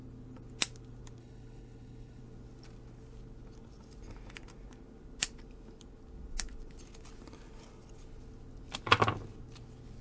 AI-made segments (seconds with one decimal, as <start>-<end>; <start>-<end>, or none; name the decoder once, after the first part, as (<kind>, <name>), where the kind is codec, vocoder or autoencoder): 1.2-2.2 (codec, HILCodec)